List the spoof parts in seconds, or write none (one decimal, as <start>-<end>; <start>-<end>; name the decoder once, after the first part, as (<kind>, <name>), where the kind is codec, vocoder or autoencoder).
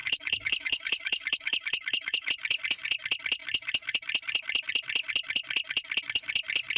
0.0-2.3 (autoencoder, DAC-VAE)